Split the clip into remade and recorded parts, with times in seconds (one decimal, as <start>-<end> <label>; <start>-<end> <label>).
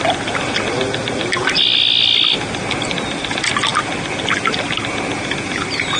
0.0-6.0 recorded